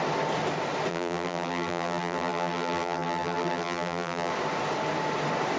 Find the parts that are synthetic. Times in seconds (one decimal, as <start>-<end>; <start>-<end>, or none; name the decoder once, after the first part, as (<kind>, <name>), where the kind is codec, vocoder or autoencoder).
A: 0.9-4.3 (vocoder, BigVGAN v2)